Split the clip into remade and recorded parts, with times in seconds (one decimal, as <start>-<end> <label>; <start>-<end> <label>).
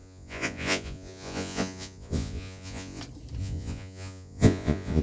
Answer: 0.0-3.0 remade; 3.0-3.4 recorded; 3.4-5.0 remade